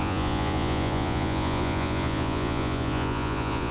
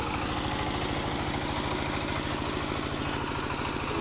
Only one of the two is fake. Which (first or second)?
first